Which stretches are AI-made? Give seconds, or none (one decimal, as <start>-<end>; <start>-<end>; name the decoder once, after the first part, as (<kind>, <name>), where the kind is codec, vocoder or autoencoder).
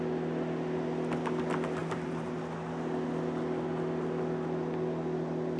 1.8-2.4 (vocoder, BigVGAN v2)